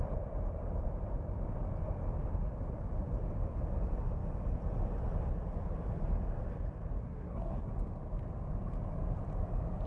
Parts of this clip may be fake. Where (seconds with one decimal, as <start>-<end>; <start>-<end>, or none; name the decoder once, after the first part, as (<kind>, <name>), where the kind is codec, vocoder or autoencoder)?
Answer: 7.0-7.7 (codec, SNAC)